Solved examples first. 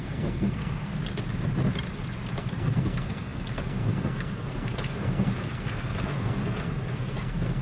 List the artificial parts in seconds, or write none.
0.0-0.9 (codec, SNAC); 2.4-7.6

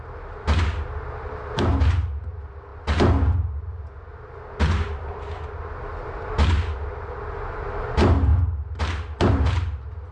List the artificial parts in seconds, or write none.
none

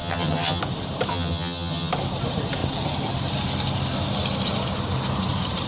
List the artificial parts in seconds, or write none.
0.0-0.6 (vocoder, HiFi-GAN); 1.1-1.9

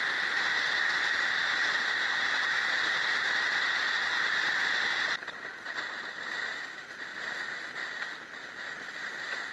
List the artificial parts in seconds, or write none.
1.4-6.1 (vocoder, BigVGAN v2); 7.8-8.5

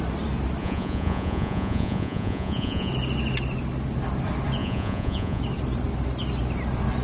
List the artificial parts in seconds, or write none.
0.6-2.9 (vocoder, Vocos); 4.6-5.4

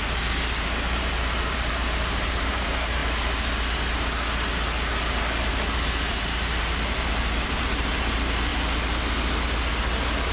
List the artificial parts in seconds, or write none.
0.0-3.0 (vocoder, BigVGAN v2); 5.2-8.5

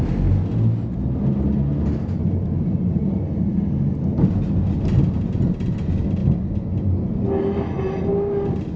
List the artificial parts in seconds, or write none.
none

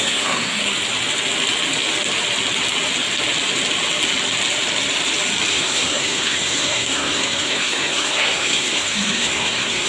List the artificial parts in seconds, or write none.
0.0-0.6 (codec, SNAC); 5.5-9.9